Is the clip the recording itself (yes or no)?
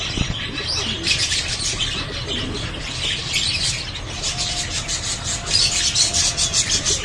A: yes